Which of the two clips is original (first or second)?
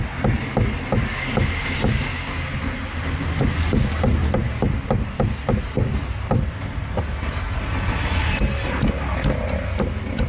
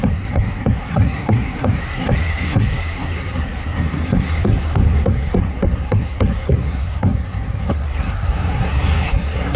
first